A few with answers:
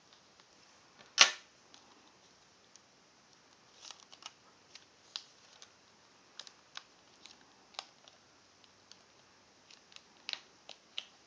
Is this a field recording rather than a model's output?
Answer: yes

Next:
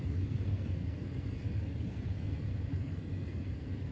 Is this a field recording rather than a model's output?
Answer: no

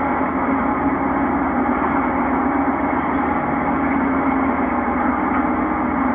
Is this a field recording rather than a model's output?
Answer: yes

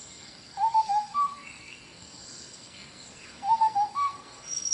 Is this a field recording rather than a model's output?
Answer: no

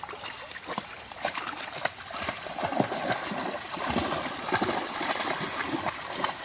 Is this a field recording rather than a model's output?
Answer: yes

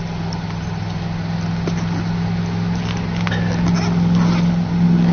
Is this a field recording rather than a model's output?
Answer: yes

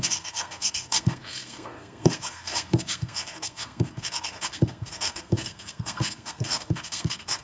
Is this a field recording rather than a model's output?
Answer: no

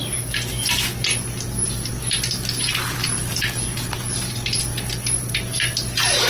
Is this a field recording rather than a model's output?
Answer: yes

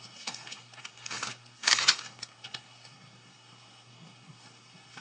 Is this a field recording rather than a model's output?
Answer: no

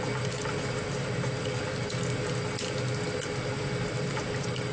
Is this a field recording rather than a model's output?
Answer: yes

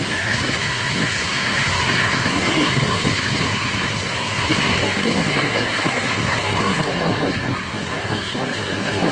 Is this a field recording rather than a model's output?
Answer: no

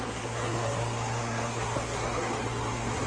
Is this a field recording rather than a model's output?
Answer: no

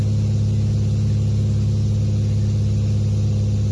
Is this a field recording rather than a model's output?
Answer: yes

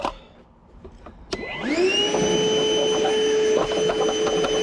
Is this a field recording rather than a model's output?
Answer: yes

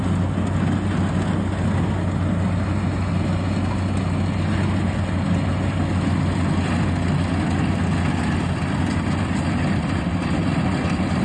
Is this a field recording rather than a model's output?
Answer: yes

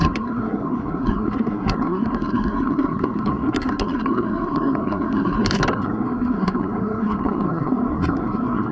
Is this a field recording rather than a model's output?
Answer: no